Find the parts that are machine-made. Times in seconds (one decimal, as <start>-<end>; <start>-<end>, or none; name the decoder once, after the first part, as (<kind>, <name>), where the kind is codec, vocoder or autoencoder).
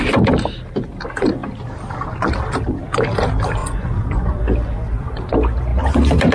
3.6-4.4 (vocoder, Vocos)